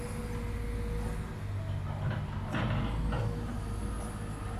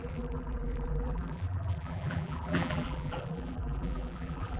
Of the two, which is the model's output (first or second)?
second